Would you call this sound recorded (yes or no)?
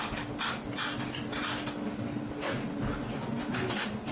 yes